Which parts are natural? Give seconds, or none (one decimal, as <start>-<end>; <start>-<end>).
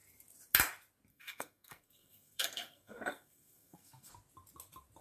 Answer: 0.0-1.1; 4.1-5.0